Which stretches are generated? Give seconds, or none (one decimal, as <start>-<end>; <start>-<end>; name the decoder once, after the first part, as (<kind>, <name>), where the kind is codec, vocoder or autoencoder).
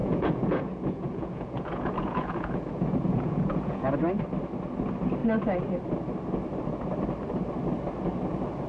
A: 0.0-3.9 (vocoder, Vocos)